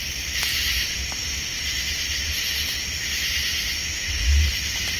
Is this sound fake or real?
real